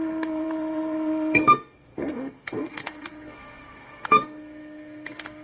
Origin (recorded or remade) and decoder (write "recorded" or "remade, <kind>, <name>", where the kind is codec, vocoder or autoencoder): remade, codec, SNAC